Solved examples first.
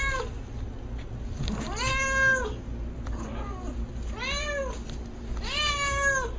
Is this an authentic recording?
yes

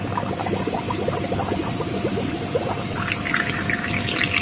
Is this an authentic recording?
no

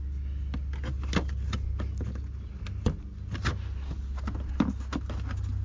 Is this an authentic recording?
yes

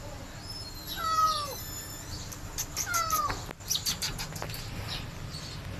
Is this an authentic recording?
yes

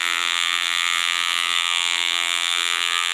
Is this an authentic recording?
no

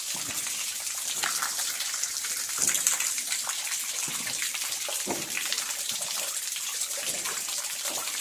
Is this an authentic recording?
no